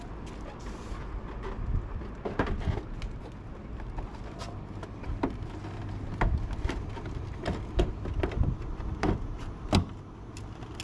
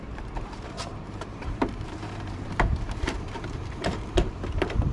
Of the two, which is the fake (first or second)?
second